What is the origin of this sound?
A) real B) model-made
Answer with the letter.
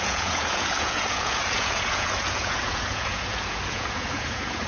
B